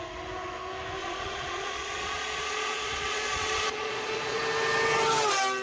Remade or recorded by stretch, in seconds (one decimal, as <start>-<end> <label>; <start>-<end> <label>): 0.0-1.0 recorded; 1.0-4.4 remade; 4.4-5.6 recorded